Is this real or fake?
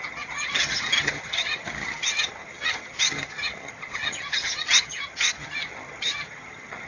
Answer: fake